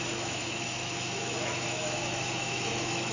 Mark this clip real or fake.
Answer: fake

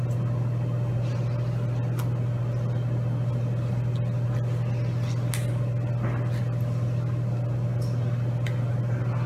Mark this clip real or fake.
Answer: real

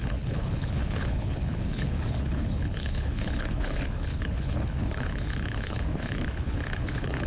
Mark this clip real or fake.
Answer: fake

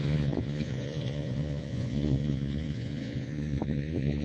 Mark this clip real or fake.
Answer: fake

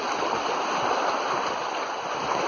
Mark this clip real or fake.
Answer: real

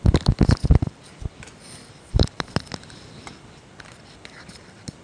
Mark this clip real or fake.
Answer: real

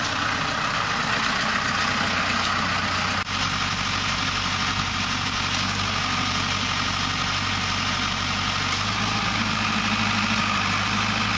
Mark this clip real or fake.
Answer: real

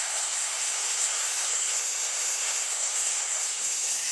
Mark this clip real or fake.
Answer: fake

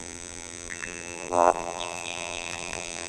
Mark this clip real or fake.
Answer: fake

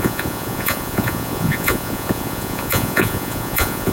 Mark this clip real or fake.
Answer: fake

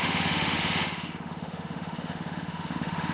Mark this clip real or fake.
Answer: fake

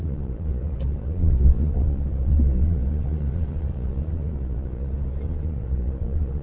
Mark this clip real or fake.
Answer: fake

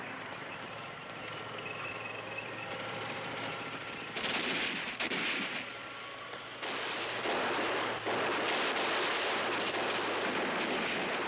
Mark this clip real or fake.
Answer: real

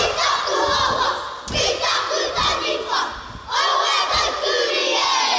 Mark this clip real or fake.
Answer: real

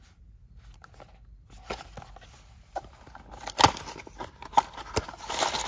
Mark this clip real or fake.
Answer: real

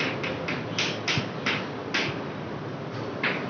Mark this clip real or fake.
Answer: fake